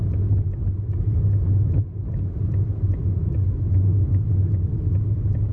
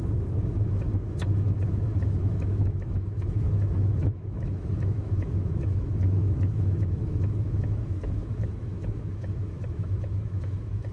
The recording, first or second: first